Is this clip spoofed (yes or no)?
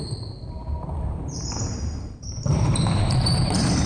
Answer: yes